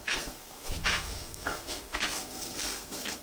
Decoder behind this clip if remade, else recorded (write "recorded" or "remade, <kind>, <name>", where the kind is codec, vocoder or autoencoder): remade, codec, SNAC